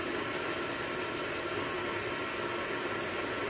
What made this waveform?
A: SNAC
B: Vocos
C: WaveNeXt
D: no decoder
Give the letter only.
D